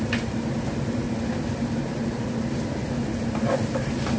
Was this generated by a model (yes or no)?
no